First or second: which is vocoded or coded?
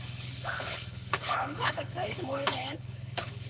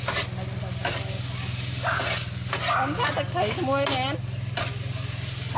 first